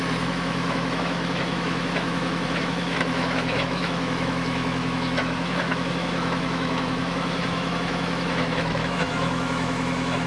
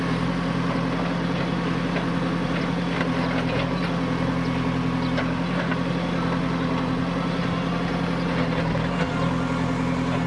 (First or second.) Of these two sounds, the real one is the second